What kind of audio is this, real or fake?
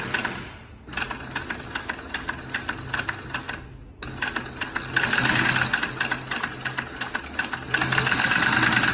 real